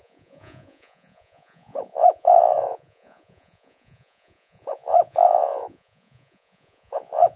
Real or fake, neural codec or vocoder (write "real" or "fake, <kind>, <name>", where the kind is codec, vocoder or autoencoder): fake, vocoder, Vocos